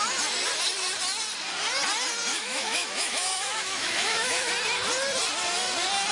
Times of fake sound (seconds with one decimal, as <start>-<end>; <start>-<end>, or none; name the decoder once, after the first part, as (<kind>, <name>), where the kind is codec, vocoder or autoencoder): 2.3-4.5 (autoencoder, DAC-VAE)